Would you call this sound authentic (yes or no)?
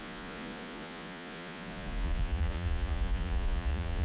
no